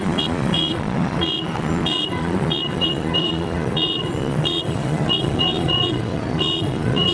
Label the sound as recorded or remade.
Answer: remade